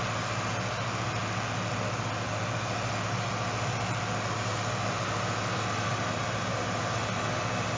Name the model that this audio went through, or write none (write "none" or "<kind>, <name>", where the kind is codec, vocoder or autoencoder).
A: none